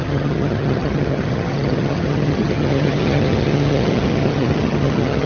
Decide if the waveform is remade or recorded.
remade